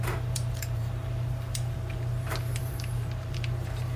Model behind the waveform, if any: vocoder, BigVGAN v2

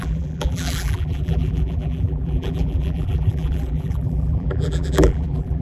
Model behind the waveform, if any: vocoder, BigVGAN v2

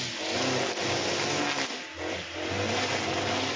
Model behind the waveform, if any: none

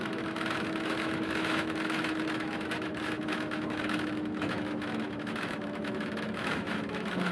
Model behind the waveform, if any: autoencoder, DAC-VAE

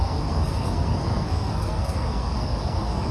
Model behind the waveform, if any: codec, SNAC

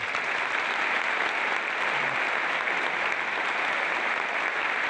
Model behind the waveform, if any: none